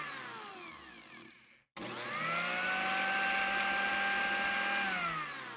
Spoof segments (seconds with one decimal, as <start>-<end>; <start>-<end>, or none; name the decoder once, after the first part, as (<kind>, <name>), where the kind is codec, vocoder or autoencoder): none